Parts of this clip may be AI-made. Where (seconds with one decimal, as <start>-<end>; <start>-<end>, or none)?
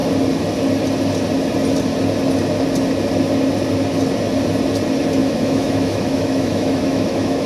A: 5.2-7.5